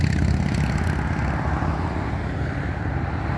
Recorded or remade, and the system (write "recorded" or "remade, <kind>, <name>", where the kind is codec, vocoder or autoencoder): recorded